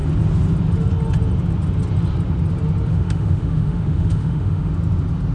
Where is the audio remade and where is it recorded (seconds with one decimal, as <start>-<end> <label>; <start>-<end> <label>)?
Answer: 0.0-2.9 recorded; 2.9-4.7 remade; 4.7-5.3 recorded